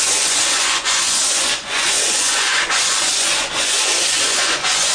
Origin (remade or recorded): remade